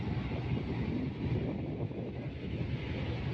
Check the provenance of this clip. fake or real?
real